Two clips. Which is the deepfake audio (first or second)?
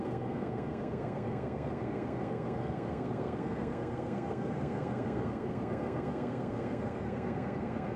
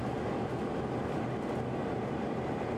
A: first